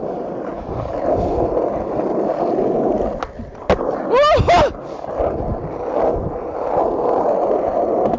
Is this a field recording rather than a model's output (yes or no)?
yes